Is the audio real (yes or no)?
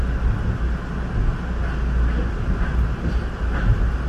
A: yes